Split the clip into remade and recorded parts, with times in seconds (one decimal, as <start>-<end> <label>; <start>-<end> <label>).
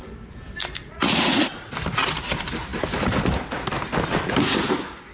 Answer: 0.0-0.8 recorded; 0.8-1.7 remade; 1.7-5.1 recorded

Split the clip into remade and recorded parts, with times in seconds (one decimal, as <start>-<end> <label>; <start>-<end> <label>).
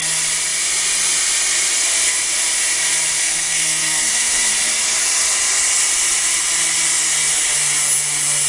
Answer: 0.0-3.2 recorded; 3.2-4.5 remade; 4.5-8.5 recorded